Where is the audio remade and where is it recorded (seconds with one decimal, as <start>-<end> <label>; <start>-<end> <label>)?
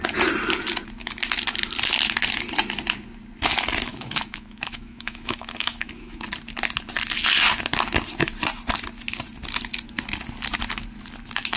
0.0-3.9 recorded; 3.9-6.2 remade; 6.2-11.6 recorded